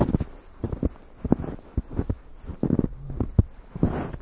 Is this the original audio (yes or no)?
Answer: yes